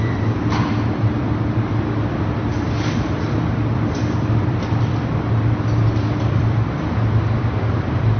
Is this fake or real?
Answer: fake